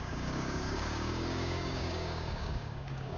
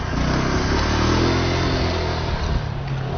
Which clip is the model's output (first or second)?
first